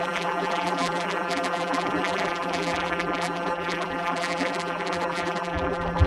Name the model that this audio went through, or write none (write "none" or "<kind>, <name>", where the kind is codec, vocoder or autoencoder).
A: vocoder, BigVGAN v2